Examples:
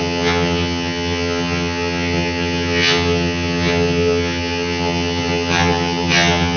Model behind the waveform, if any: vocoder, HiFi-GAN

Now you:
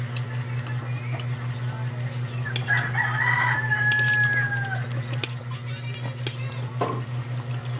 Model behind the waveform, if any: none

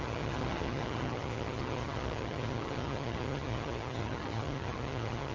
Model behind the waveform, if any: vocoder, HiFi-GAN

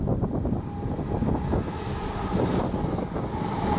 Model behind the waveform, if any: none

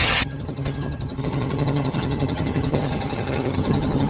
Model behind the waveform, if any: vocoder, HiFi-GAN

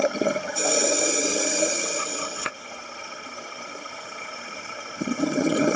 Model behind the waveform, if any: vocoder, HiFi-GAN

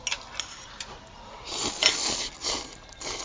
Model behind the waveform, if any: none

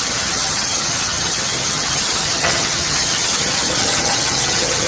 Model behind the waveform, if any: vocoder, HiFi-GAN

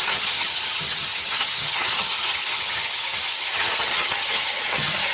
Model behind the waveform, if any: vocoder, HiFi-GAN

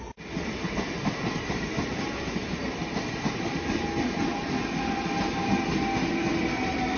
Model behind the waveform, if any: none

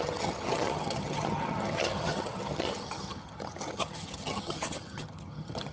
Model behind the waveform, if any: vocoder, HiFi-GAN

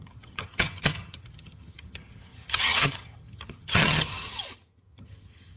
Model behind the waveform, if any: vocoder, HiFi-GAN